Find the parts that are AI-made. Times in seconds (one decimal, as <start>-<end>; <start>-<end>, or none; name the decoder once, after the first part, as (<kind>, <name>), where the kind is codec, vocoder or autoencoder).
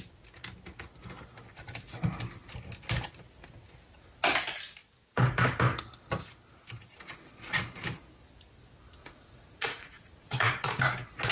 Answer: 9.0-10.8 (vocoder, Vocos)